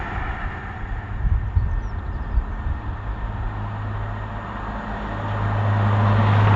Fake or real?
real